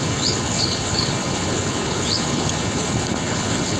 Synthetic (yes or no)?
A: yes